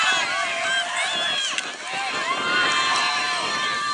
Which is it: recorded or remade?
recorded